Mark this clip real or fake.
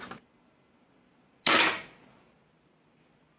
real